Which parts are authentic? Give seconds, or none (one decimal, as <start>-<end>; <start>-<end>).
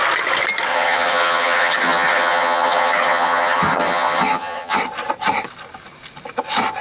0.0-0.7; 4.8-6.8